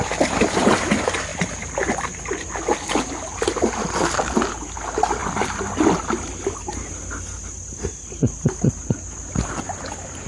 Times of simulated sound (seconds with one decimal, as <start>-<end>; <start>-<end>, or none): none